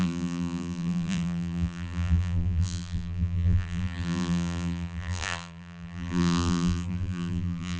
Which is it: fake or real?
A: fake